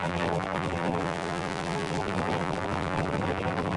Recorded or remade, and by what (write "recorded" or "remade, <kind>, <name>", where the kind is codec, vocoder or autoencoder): remade, vocoder, BigVGAN v2